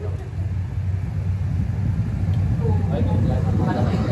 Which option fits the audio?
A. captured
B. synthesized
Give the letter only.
A